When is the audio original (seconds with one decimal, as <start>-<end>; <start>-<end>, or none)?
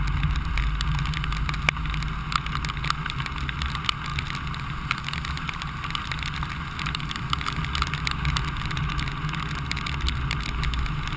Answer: 0.0-4.1; 9.1-11.2